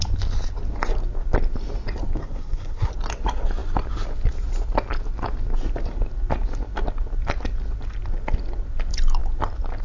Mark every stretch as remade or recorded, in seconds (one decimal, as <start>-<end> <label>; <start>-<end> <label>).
0.0-2.2 recorded; 2.2-2.9 remade; 2.9-9.8 recorded